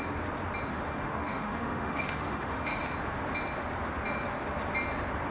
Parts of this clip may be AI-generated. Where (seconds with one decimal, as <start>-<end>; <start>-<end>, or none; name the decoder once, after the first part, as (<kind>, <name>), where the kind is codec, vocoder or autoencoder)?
0.7-2.8 (autoencoder, DAC-VAE)